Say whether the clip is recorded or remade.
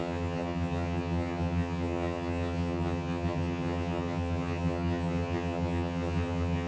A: remade